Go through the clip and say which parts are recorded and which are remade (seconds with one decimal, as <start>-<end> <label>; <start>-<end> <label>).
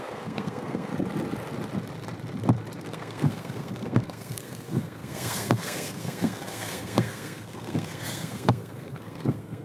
0.0-0.9 remade; 0.9-2.8 recorded; 2.8-9.6 remade